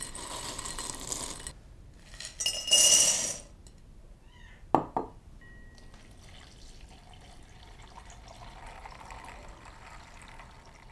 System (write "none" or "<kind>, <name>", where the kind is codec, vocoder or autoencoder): none